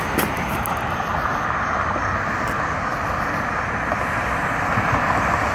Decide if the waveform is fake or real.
real